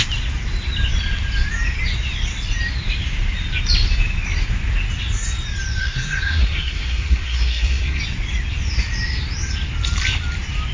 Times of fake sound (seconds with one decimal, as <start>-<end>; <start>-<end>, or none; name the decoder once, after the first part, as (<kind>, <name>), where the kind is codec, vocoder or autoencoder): 5.8-8.0 (codec, SNAC)